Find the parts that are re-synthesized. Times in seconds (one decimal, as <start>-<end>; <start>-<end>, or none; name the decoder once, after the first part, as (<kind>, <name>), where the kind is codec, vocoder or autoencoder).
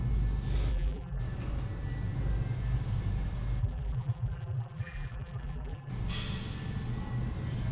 0.7-1.2 (vocoder, BigVGAN v2); 3.6-5.9